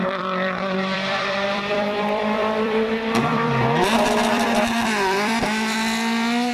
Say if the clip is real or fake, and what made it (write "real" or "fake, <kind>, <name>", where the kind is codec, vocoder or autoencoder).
fake, vocoder, BigVGAN v2